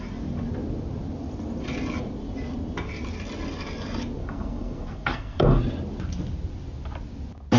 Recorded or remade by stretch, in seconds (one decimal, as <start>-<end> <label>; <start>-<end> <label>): 0.0-4.2 recorded; 4.2-5.6 remade; 5.6-7.6 recorded